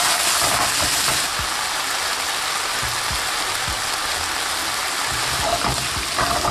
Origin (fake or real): real